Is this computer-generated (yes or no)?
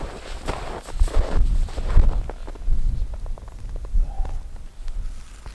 no